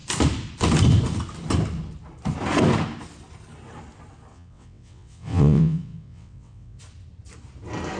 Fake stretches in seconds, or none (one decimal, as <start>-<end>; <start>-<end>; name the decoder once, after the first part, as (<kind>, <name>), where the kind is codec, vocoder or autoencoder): 4.3-6.8 (vocoder, WaveNeXt)

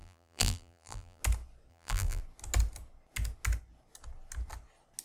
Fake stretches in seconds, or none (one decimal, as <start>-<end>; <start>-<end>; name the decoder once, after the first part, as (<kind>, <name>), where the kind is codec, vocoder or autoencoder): 0.0-1.2 (vocoder, BigVGAN v2); 1.7-2.2

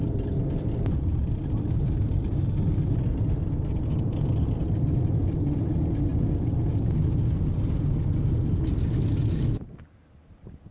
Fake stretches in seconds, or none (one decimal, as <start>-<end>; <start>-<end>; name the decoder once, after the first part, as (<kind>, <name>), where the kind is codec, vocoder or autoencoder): none

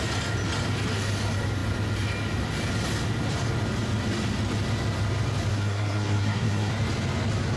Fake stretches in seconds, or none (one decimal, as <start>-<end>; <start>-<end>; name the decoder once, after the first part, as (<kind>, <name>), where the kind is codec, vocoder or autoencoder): 5.5-6.7 (codec, SNAC)

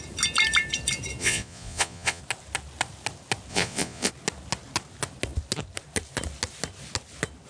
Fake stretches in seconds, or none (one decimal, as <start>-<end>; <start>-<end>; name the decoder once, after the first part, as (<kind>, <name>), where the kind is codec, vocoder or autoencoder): 1.2-2.2 (vocoder, Vocos); 3.5-4.1

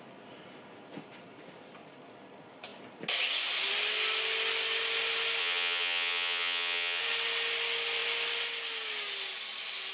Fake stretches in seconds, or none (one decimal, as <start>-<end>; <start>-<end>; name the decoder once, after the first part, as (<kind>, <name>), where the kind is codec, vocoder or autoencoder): 5.4-7.0 (vocoder, HiFi-GAN)

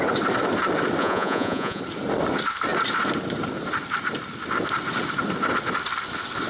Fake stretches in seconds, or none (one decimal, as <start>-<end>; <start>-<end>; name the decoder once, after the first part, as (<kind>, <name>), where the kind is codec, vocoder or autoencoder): 1.0-1.8 (vocoder, Vocos)

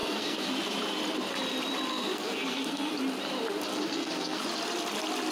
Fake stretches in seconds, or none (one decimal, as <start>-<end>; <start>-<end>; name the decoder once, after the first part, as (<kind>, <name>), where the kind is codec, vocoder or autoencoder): 0.0-0.5 (codec, SNAC); 1.9-2.9; 3.7-4.4